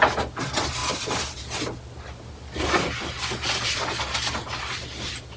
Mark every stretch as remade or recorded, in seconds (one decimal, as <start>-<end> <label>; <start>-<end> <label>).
0.0-5.4 recorded